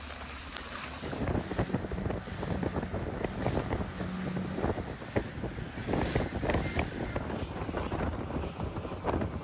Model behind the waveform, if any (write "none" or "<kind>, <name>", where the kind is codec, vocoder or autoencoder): none